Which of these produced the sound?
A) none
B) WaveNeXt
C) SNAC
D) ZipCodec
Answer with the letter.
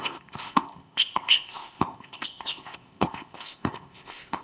D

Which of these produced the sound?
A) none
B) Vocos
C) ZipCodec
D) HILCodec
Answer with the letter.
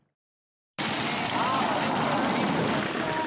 A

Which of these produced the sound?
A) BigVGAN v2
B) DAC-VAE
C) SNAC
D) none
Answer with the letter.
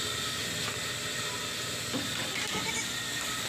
D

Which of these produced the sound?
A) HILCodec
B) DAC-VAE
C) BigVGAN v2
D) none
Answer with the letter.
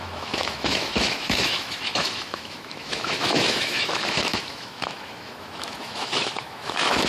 B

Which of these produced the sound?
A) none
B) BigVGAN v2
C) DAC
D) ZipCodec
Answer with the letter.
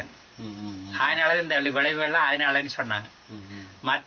C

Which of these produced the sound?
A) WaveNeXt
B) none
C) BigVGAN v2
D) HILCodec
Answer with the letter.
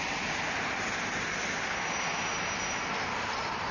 B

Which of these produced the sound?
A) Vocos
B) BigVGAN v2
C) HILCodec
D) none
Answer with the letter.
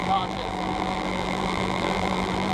B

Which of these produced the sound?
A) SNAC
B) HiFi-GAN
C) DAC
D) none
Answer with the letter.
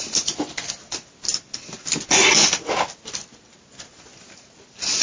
D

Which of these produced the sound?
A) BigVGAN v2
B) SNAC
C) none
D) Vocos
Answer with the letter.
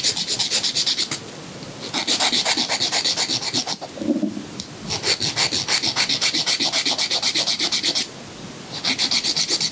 C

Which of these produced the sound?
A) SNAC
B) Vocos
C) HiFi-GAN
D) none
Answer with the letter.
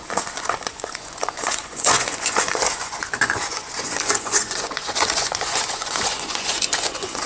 B